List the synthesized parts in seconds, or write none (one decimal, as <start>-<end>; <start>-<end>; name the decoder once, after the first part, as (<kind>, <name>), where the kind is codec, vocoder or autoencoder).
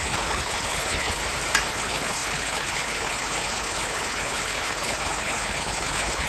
0.0-1.2 (codec, HILCodec); 1.7-6.3